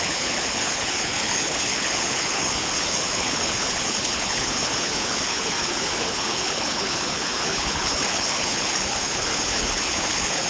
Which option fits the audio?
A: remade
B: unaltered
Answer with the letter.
A